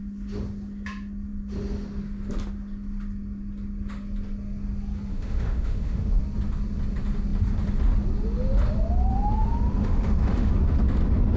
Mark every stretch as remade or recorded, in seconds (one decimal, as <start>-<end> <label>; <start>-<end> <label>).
0.0-5.1 recorded; 5.1-6.2 remade; 6.2-9.8 recorded; 9.8-10.5 remade; 10.5-11.4 recorded